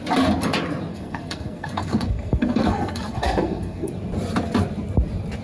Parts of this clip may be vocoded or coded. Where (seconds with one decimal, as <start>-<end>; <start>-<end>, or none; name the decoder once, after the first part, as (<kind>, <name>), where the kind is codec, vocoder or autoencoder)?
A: 0.9-3.9 (codec, SNAC)